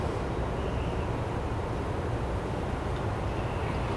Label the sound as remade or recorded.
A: recorded